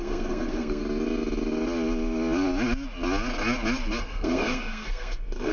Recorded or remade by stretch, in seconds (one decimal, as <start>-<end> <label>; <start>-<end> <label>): 0.0-0.8 remade; 0.8-4.0 recorded; 4.0-5.5 remade